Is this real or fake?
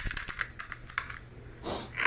real